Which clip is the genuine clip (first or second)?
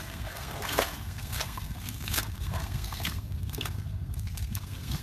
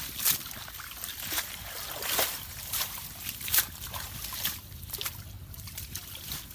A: second